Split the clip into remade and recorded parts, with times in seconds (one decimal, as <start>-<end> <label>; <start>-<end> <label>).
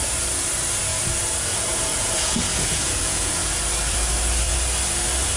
0.0-1.5 recorded; 1.5-3.3 remade; 3.3-5.4 recorded